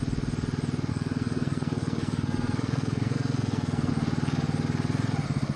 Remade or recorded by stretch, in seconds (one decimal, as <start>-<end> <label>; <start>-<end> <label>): 0.0-0.9 recorded; 0.9-3.9 remade; 3.9-5.6 recorded